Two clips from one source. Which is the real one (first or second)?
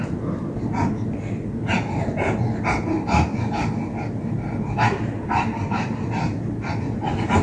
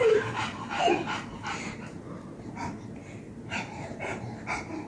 first